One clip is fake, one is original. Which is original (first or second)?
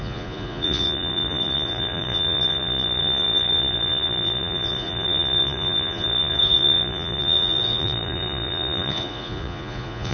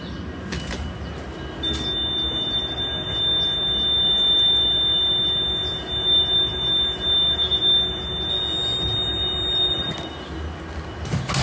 second